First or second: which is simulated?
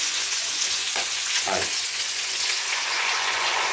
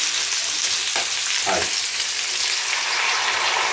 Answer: first